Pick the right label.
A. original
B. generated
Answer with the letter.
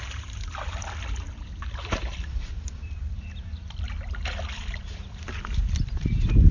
A